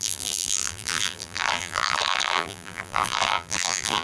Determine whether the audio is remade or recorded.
remade